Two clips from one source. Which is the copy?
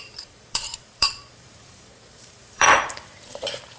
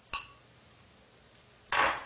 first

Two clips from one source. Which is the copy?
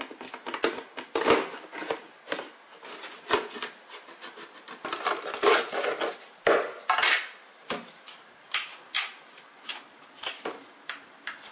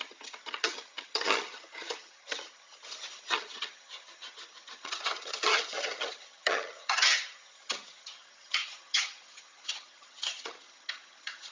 second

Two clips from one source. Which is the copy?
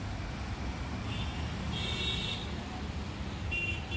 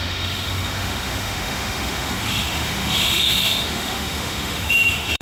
second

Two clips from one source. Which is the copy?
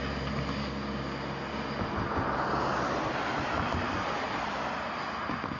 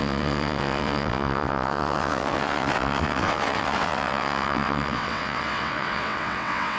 second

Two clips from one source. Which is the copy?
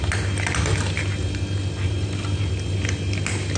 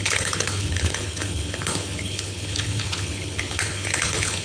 second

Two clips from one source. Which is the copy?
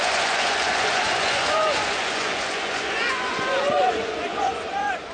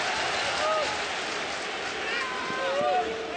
first